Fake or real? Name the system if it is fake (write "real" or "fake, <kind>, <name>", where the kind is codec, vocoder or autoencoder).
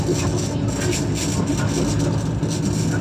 real